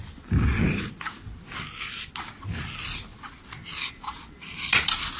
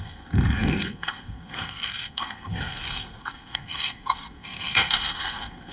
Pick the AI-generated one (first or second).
second